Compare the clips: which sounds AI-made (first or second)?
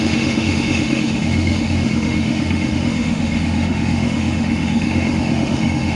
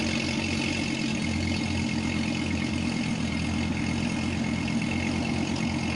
first